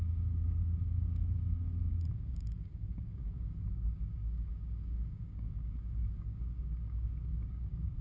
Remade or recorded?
remade